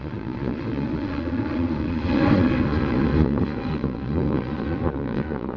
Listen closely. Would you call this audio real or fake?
fake